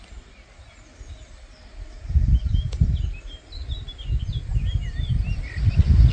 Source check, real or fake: real